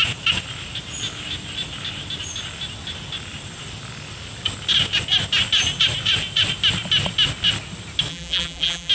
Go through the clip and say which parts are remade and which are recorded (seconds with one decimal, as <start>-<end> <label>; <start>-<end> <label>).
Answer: 0.0-8.1 recorded; 8.1-8.9 remade